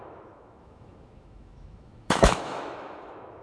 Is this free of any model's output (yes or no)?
no